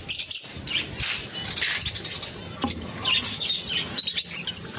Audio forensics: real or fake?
real